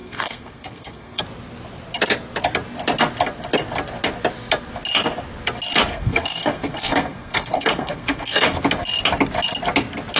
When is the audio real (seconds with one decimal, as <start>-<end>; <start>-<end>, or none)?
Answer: 1.2-5.9; 8.6-10.2